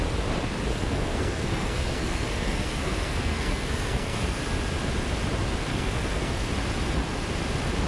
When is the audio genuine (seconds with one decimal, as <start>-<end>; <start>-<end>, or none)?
0.0-0.7; 4.4-5.7; 6.5-7.9

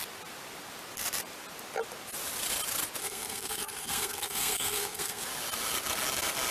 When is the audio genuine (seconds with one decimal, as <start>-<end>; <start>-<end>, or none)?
0.0-3.0; 5.2-6.5